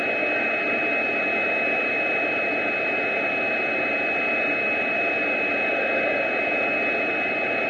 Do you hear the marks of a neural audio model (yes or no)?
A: no